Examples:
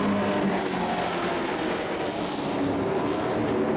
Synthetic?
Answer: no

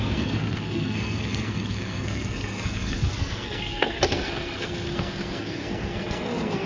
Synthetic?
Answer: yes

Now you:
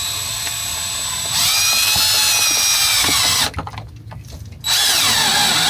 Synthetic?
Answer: no